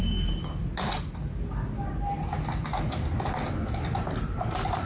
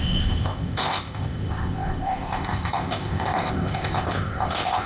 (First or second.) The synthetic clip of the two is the second